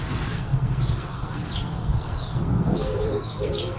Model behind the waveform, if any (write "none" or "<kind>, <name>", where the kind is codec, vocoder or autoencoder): codec, SNAC